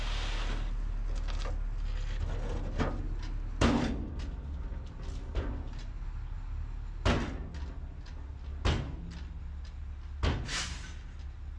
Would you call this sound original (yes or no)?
yes